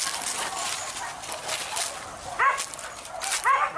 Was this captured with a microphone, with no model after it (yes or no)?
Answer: yes